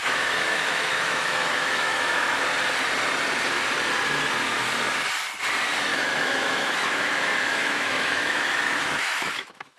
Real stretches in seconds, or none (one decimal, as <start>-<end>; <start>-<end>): 2.4-5.9